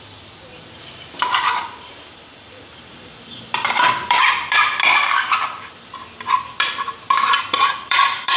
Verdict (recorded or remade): remade